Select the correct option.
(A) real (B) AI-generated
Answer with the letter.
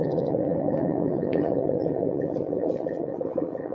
B